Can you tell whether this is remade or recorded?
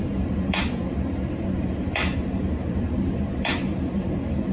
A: remade